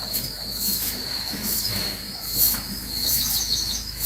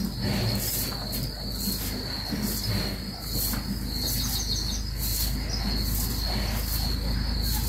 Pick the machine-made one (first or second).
first